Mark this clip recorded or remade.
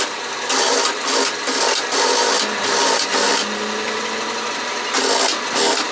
recorded